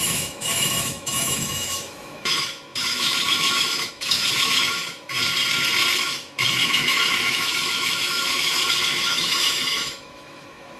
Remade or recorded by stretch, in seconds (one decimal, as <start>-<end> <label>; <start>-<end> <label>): 0.0-5.2 remade; 5.2-6.0 recorded; 6.0-10.8 remade